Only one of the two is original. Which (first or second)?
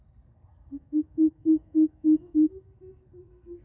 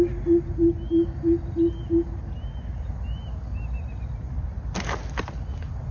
second